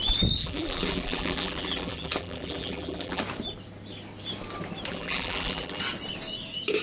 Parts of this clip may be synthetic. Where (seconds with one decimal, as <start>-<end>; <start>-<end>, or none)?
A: 0.4-3.2; 4.9-5.8